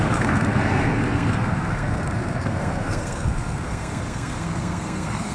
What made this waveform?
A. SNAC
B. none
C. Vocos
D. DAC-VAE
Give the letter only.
A